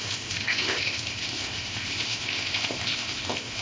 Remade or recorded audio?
remade